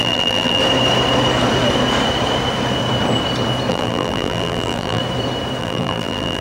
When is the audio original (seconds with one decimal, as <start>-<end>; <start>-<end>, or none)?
0.6-3.7; 5.0-5.6